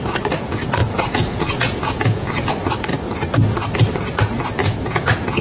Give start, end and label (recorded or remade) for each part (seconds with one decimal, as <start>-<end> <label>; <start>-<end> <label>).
0.0-0.8 recorded; 0.8-2.5 remade; 2.5-4.6 recorded; 4.6-5.4 remade